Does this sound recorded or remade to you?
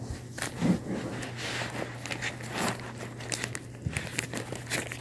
recorded